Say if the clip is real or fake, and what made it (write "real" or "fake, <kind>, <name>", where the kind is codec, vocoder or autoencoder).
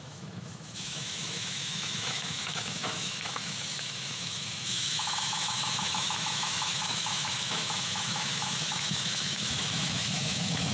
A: fake, autoencoder, DAC-VAE